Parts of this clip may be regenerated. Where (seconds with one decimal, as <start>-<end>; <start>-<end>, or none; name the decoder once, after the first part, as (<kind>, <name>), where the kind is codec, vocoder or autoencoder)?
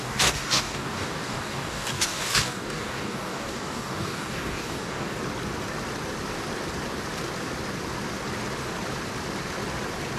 0.0-5.2 (codec, DAC)